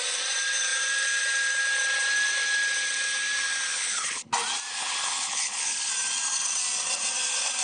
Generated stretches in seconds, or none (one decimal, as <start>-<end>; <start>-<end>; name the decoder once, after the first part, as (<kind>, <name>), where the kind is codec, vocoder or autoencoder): 3.7-4.3 (codec, HILCodec); 4.7-5.9